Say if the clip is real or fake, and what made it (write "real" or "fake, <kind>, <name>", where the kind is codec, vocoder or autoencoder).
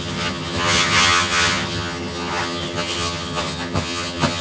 fake, vocoder, HiFi-GAN